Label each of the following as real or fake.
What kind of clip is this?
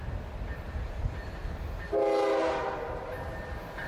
real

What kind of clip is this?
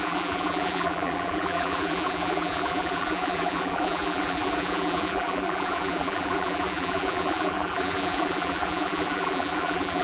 fake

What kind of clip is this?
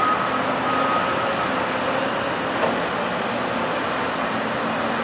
real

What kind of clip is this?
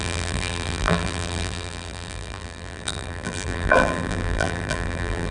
fake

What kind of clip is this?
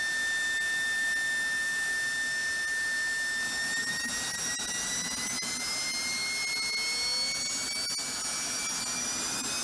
real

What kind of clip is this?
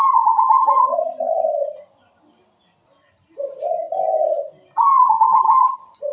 fake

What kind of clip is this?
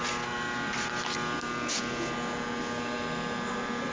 real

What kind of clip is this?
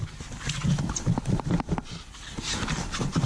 real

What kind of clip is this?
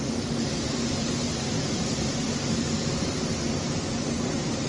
fake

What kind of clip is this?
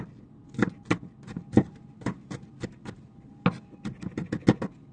real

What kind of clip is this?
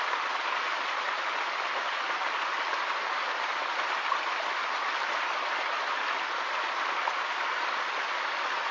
real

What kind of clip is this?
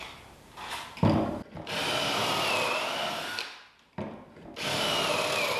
real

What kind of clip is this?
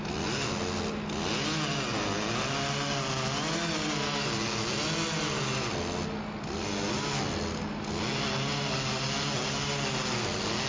real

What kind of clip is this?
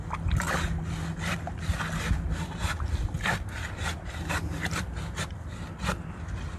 real